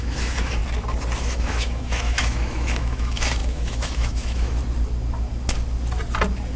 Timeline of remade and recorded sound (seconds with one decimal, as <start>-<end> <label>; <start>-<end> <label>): 0.0-0.6 remade; 0.6-1.2 recorded; 1.2-4.6 remade; 4.6-6.6 recorded